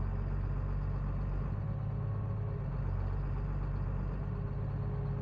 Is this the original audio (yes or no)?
yes